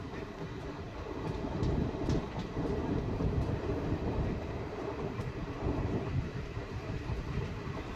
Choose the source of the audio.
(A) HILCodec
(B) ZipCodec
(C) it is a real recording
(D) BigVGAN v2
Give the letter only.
D